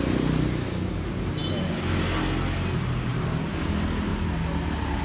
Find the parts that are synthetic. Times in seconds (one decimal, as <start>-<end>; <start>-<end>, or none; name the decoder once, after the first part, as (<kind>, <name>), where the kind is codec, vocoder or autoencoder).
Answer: none